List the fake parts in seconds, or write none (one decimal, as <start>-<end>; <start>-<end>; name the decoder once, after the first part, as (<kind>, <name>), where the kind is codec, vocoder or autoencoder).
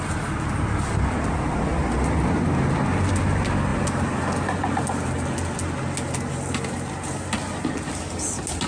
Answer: none